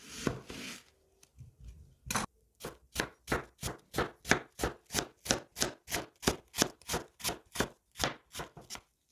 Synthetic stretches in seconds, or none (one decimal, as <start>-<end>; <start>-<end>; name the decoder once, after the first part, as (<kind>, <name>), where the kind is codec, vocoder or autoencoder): none